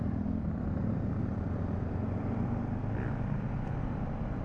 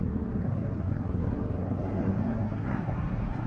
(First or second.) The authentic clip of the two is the first